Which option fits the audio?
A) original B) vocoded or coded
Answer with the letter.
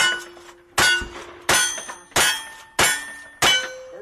A